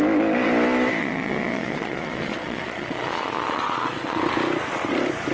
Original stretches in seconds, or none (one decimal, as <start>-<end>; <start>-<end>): 0.0-1.0; 4.2-5.3